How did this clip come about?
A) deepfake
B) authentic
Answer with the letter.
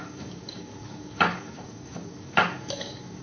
A